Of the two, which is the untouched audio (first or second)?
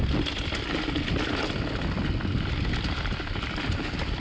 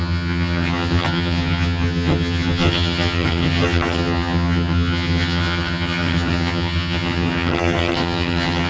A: first